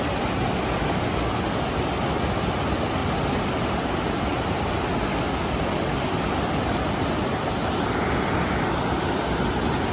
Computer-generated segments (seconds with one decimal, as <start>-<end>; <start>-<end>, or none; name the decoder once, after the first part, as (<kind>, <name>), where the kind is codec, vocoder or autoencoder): 3.0-4.7 (vocoder, BigVGAN v2)